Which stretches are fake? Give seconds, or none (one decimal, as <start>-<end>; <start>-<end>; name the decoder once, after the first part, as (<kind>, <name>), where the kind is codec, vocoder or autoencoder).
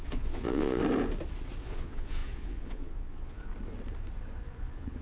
0.0-0.8 (vocoder, Vocos); 1.6-3.5; 4.4-5.0